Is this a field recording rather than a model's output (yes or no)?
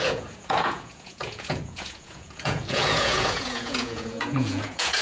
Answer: no